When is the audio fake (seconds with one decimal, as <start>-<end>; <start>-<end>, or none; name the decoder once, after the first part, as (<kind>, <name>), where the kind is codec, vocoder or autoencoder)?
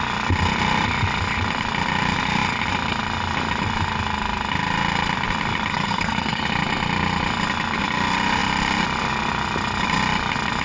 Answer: 5.7-6.4 (codec, SNAC)